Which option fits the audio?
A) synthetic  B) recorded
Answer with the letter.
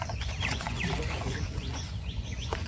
A